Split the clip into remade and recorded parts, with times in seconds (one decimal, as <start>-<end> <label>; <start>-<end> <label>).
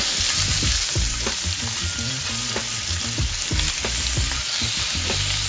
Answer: 0.0-1.8 remade; 1.8-4.4 recorded; 4.4-5.5 remade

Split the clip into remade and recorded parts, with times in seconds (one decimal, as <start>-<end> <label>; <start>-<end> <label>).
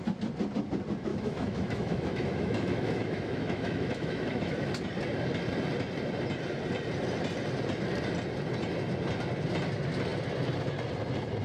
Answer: 0.0-1.1 recorded; 1.1-4.7 remade; 4.7-11.4 recorded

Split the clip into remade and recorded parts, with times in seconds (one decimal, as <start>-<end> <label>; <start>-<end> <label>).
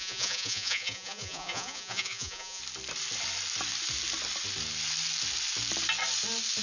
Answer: 0.0-2.6 remade; 2.6-6.6 recorded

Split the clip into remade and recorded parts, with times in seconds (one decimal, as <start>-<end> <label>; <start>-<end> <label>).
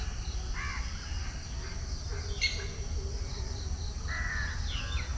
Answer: 0.0-5.2 recorded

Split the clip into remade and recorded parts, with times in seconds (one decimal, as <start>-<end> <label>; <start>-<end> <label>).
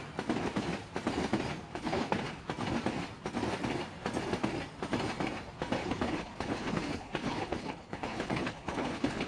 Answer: 0.0-1.7 recorded; 1.7-2.4 remade; 2.4-5.8 recorded; 5.8-9.3 remade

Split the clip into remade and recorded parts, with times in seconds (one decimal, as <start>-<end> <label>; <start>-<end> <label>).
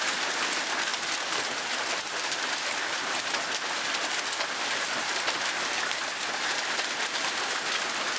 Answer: 0.0-8.2 recorded